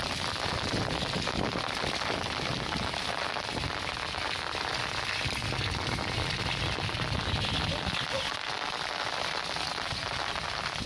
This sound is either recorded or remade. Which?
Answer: recorded